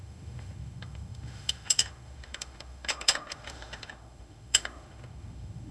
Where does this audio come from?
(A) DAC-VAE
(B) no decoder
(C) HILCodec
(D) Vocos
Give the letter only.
A